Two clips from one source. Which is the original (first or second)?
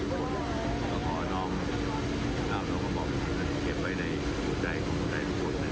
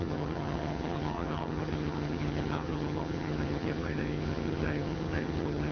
first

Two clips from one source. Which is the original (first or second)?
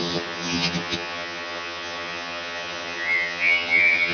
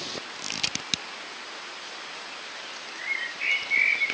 second